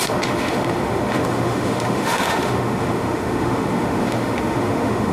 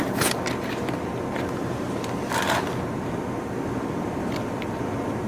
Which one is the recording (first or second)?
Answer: second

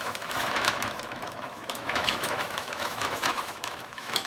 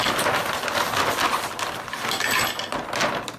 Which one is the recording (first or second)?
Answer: second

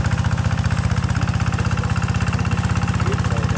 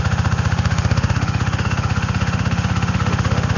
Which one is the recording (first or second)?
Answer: first